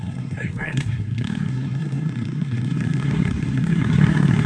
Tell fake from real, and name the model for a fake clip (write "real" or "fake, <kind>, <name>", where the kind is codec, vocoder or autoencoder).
fake, codec, SNAC